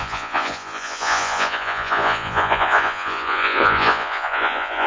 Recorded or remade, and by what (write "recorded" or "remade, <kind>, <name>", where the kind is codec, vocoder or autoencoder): remade, vocoder, Vocos